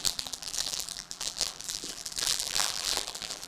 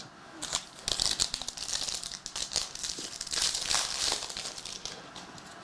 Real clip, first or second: second